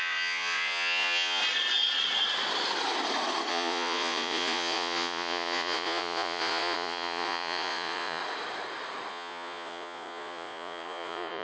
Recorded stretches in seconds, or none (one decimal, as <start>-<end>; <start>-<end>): 1.4-3.5; 8.2-9.1